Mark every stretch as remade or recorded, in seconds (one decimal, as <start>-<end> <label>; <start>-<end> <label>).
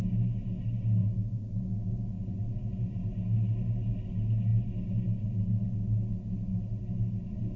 0.0-1.0 recorded; 1.0-2.9 remade; 2.9-7.6 recorded